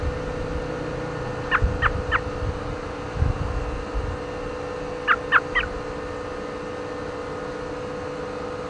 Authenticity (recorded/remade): recorded